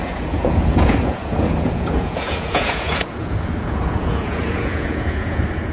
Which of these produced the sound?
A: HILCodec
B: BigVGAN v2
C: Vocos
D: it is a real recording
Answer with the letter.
C